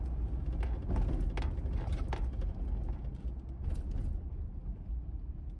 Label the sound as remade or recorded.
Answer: recorded